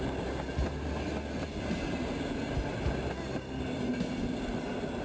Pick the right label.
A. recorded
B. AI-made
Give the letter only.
A